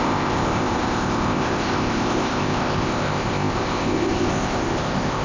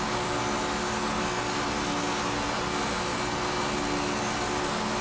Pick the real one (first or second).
second